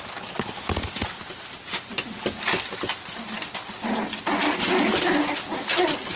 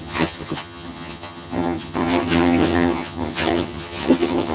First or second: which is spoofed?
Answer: second